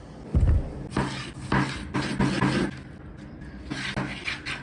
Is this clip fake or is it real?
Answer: real